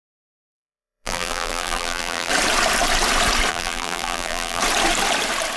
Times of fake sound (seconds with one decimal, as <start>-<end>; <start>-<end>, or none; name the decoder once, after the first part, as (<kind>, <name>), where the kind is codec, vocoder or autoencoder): 0.0-2.3 (vocoder, BigVGAN v2); 3.5-4.6